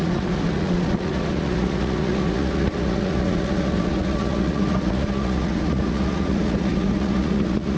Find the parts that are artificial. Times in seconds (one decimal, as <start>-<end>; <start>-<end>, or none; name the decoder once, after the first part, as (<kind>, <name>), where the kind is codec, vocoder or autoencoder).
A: 0.0-7.8 (vocoder, Vocos)